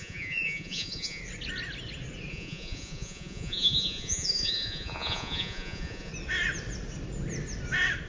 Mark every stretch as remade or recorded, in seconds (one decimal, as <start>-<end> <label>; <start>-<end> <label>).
0.0-1.2 remade; 1.2-2.3 recorded; 2.3-6.1 remade; 6.1-8.1 recorded